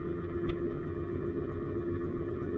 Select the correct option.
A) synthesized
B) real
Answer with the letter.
A